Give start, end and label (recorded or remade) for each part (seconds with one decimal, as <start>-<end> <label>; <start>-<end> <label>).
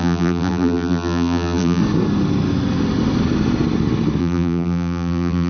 0.0-1.8 remade; 1.8-4.2 recorded; 4.2-5.5 remade